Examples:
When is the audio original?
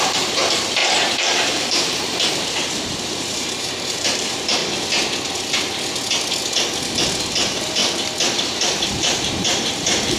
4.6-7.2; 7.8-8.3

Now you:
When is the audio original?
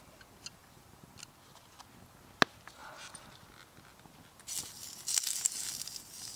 0.0-0.6; 1.2-6.4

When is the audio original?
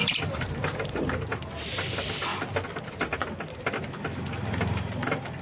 1.1-5.4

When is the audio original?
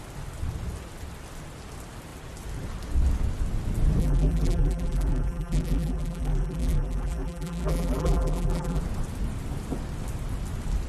0.0-4.0; 8.8-10.9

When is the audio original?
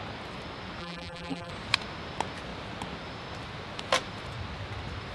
0.0-0.8; 1.5-5.1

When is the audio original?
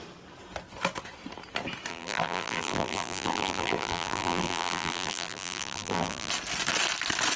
0.0-1.9; 6.3-7.4